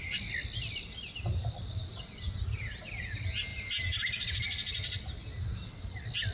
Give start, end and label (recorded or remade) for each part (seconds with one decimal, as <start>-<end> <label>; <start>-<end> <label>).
0.0-3.5 recorded; 3.5-5.4 remade; 5.4-6.3 recorded